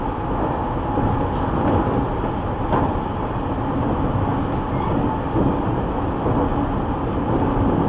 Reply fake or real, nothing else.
real